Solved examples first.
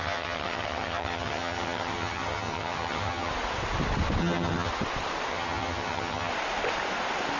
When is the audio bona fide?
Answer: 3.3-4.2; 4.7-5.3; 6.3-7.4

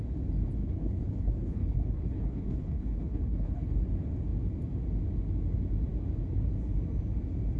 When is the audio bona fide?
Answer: 0.0-0.6; 3.7-7.6

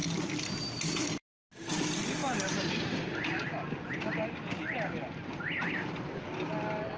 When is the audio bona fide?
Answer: 0.0-7.0

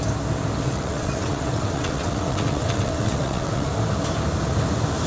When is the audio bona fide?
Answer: 0.0-0.6; 3.7-5.1

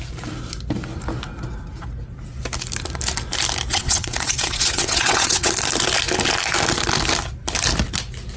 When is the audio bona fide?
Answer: 0.0-3.7; 5.5-8.4

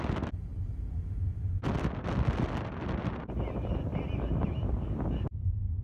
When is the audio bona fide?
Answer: 0.0-5.8

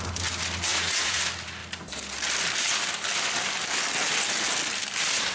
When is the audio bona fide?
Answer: 0.0-0.7; 1.2-5.3

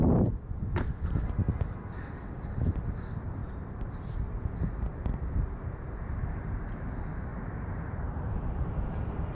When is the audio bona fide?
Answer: 0.0-3.4; 6.0-7.3; 8.9-9.3